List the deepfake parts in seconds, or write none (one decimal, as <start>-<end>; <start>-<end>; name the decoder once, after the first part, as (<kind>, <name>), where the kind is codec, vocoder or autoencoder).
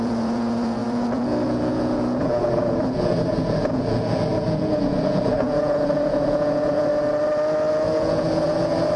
0.0-6.9 (vocoder, Vocos); 7.7-9.0